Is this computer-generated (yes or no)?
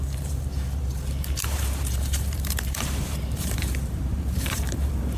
yes